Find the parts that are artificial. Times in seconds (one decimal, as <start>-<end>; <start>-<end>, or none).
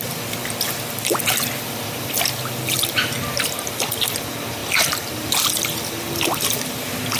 none